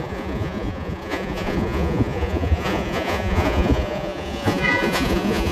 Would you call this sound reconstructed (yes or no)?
yes